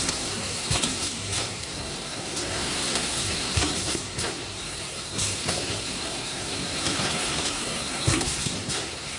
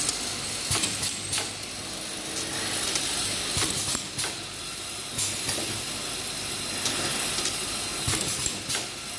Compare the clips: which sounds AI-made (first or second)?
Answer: first